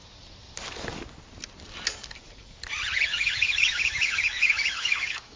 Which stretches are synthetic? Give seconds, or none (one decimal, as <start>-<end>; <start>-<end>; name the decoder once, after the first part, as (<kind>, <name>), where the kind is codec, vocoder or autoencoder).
3.1-5.4 (autoencoder, DAC-VAE)

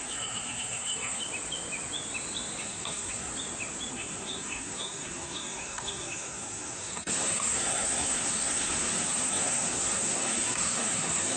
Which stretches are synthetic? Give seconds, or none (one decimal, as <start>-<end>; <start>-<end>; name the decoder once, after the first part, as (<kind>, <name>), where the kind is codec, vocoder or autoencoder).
0.0-1.2 (codec, SNAC); 2.6-3.3; 3.9-11.4

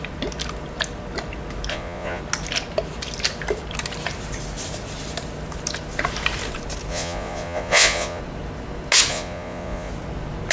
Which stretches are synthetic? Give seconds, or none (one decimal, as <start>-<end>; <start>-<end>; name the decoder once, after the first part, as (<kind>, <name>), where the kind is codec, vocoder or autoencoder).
1.7-2.2 (vocoder, Vocos); 6.9-8.2; 9.1-9.9